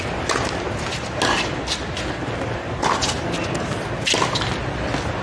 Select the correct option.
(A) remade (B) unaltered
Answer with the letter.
B